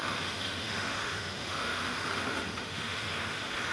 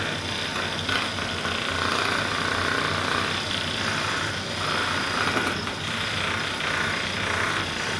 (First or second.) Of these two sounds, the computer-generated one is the first